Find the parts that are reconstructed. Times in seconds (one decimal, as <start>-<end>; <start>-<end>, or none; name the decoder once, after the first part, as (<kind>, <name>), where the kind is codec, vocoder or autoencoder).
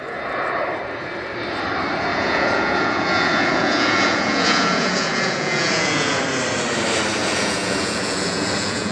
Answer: 2.1-6.2 (vocoder, Vocos); 7.2-8.9